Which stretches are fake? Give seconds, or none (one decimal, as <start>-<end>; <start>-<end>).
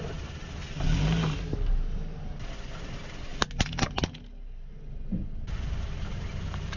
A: none